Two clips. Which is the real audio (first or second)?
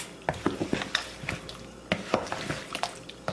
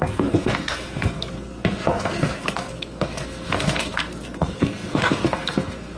first